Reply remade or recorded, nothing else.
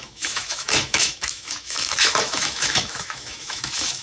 remade